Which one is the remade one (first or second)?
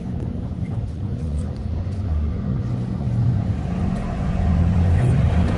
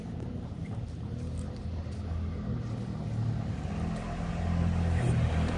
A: first